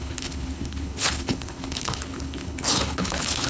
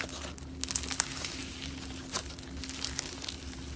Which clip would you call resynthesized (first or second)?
first